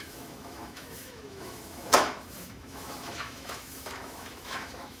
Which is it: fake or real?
fake